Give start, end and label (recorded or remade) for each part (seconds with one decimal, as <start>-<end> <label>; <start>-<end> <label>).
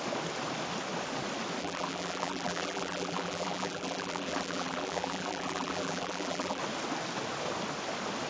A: 0.0-1.6 recorded; 1.6-6.6 remade; 6.6-8.3 recorded